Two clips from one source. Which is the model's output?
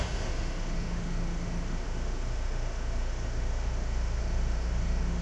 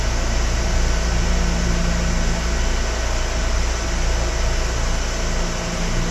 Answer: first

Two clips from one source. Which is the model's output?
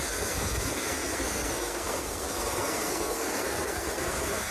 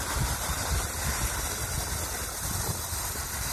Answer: first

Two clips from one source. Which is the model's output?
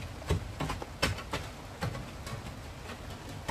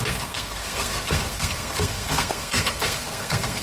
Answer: second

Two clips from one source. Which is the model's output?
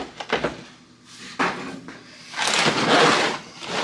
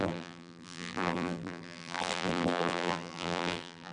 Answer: second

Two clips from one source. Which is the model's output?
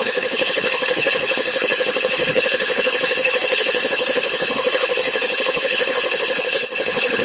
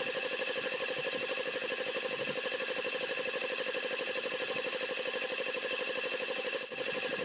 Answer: first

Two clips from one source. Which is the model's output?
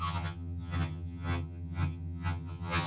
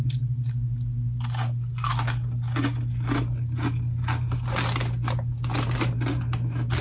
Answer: first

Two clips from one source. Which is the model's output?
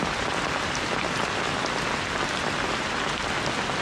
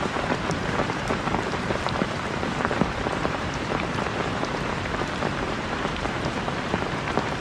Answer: second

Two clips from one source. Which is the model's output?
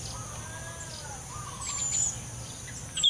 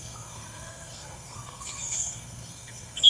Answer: second